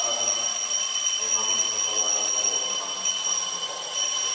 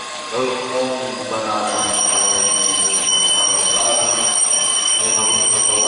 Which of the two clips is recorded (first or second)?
first